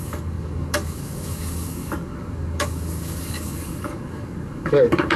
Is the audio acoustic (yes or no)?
no